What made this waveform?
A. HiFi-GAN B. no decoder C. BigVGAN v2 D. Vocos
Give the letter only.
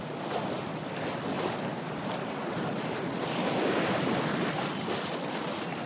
B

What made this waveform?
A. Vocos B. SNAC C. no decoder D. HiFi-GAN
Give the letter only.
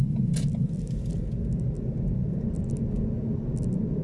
C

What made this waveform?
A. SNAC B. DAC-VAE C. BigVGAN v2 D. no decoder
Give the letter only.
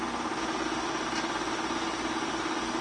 D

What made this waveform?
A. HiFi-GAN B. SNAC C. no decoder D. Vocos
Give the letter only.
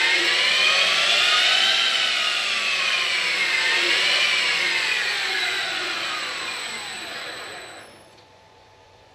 D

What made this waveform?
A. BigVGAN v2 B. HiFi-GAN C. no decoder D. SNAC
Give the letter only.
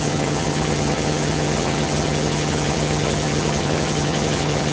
B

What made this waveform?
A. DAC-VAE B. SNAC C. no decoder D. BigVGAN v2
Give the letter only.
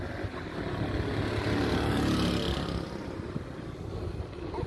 C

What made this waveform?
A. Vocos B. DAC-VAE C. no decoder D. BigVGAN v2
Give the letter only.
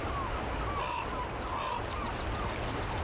C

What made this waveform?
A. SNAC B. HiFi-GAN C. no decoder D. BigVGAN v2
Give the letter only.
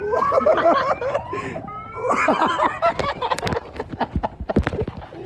D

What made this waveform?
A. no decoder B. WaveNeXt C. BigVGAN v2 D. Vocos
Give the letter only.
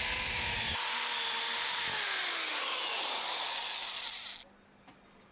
A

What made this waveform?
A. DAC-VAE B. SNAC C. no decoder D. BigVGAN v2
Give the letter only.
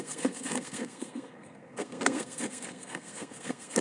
B